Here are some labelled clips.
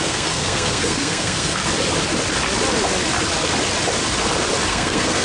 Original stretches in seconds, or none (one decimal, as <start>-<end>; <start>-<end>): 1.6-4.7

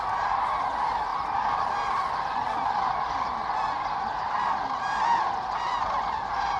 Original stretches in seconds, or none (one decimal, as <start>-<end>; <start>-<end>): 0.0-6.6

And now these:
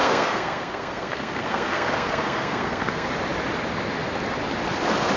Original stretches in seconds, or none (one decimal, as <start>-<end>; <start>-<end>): 3.1-5.2